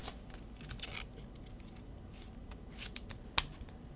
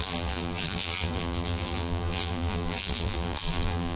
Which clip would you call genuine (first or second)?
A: first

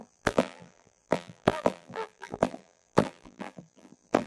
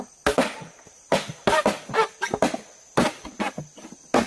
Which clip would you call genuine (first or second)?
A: second